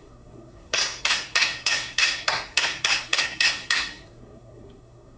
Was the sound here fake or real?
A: fake